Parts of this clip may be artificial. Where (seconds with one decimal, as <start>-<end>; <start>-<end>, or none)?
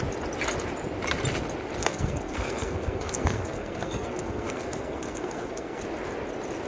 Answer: 1.8-5.8